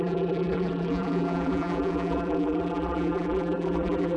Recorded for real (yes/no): no